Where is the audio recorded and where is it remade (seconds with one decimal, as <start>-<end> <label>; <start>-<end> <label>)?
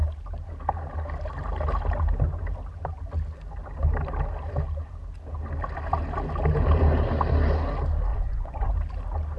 0.0-8.1 recorded; 8.1-8.7 remade; 8.7-9.4 recorded